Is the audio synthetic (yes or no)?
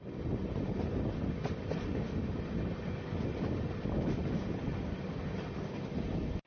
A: no